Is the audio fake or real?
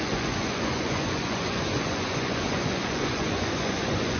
fake